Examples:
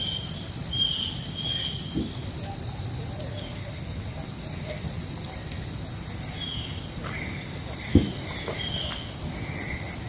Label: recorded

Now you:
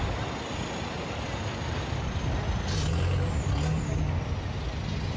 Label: recorded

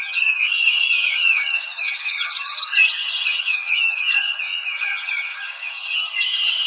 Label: remade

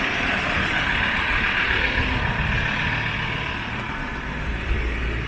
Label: recorded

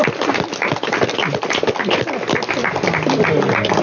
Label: recorded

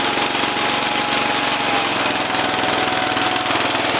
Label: recorded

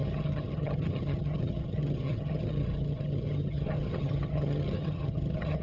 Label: remade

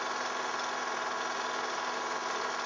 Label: recorded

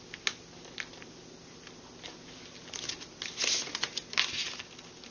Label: recorded